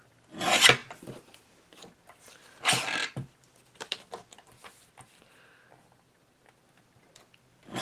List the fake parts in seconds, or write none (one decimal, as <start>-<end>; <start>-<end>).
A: 3.0-6.6